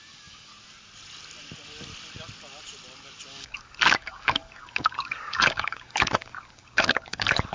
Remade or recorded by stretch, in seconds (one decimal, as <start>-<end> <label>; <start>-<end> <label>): 0.0-0.5 remade; 0.5-3.3 recorded; 3.3-7.5 remade